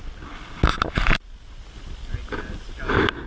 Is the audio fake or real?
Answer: real